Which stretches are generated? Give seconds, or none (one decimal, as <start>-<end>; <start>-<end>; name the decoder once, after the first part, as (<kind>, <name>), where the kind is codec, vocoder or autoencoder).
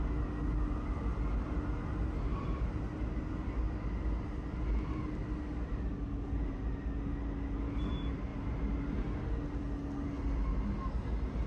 none